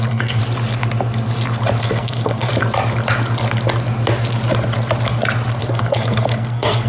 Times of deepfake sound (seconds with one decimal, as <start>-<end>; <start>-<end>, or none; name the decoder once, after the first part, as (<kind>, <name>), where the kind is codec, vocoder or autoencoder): 0.0-0.4 (codec, SNAC); 1.8-2.5; 5.6-6.9